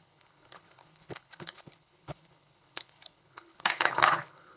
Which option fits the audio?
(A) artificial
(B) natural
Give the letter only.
A